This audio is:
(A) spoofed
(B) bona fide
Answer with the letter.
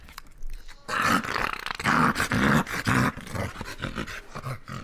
B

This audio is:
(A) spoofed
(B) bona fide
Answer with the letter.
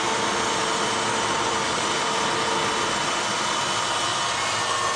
B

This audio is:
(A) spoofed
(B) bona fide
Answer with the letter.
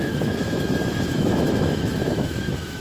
A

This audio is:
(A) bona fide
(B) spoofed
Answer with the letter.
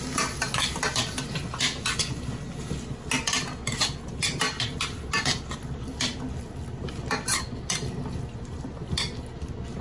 A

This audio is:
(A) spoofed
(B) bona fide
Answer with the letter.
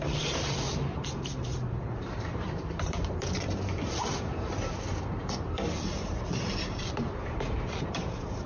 A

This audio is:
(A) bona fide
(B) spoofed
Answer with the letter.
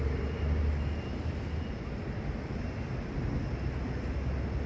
A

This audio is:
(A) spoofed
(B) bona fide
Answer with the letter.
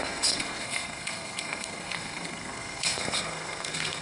A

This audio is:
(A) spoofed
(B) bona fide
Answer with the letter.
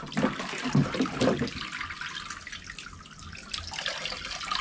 B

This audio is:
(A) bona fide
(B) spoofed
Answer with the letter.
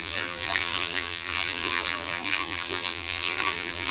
B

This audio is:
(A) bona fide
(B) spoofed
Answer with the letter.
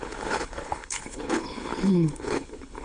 B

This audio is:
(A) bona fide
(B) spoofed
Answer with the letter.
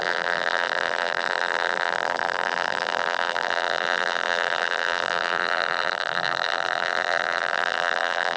B